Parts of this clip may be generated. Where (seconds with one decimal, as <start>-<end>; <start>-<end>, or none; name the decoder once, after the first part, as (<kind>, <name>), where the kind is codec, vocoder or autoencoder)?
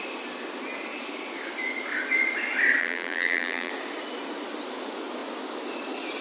2.8-3.7 (vocoder, BigVGAN v2)